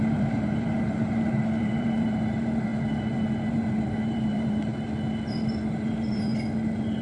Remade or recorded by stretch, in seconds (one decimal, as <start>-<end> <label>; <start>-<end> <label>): 0.0-2.7 remade; 2.7-3.5 recorded; 3.5-4.7 remade; 4.7-5.7 recorded; 5.7-6.3 remade; 6.3-7.0 recorded